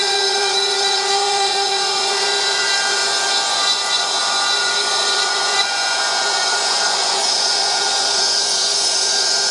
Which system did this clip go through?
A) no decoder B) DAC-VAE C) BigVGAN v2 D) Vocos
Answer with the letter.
D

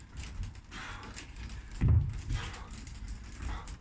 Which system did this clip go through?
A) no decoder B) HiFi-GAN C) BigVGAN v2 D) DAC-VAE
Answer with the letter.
A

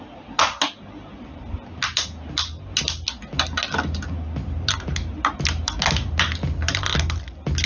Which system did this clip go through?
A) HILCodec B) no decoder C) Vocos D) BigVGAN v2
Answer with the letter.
B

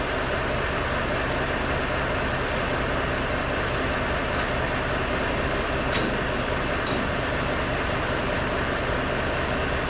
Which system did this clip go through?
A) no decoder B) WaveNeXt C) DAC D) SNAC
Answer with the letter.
A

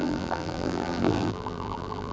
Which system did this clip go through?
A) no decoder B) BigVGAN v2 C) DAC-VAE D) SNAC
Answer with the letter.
B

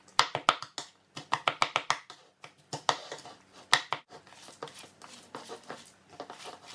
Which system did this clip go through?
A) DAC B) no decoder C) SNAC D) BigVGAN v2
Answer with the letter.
B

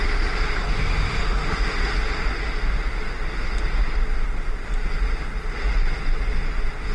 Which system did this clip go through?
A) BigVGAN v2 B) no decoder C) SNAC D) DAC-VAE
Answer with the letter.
B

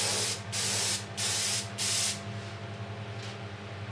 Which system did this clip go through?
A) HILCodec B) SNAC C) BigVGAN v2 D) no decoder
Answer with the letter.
D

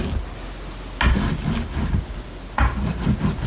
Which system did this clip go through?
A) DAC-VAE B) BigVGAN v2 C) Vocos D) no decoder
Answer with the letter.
D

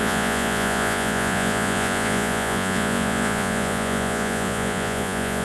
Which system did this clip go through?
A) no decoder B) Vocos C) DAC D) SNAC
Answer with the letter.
B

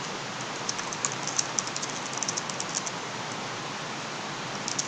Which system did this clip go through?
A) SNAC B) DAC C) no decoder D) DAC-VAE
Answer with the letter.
C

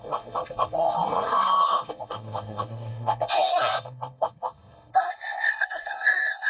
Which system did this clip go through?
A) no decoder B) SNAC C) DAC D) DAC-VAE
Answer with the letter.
B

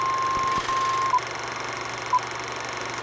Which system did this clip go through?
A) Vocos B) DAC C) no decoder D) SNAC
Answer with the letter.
C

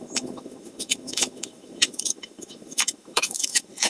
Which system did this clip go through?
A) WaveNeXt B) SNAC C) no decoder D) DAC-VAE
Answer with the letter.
D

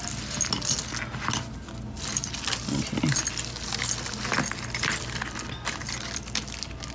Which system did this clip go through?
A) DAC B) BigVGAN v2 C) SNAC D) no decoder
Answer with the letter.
D